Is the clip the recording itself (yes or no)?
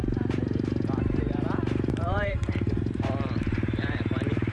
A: no